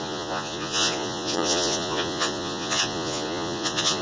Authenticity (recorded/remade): remade